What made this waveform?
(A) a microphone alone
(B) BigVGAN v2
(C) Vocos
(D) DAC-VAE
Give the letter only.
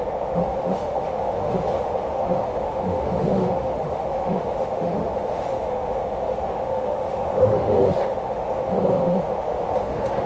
D